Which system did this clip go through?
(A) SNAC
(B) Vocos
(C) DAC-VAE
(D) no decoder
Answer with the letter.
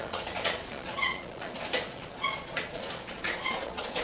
B